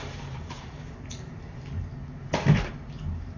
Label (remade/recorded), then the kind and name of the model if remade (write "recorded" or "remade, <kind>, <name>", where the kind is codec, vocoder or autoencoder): remade, vocoder, BigVGAN v2